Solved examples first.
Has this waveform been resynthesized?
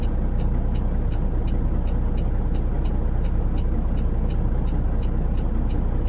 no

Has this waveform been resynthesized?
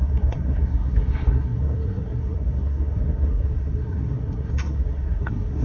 yes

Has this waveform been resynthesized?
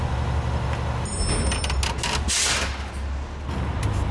no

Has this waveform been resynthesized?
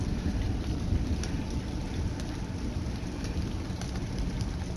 no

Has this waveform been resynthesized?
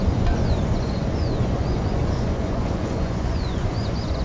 yes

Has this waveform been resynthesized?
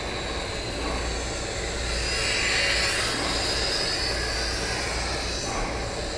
no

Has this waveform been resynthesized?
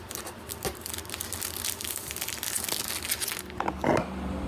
no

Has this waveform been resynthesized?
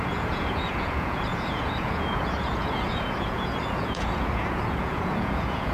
yes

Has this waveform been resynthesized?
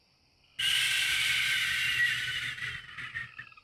no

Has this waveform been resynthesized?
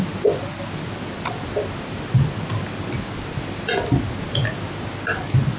no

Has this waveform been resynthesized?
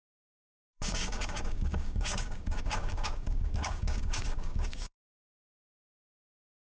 yes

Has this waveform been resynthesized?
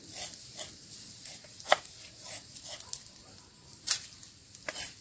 no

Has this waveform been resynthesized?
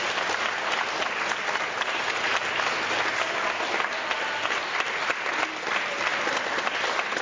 no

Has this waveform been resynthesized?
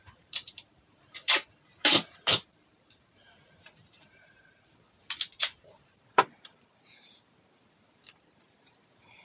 yes